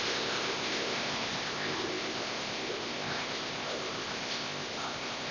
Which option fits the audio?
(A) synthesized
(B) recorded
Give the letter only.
A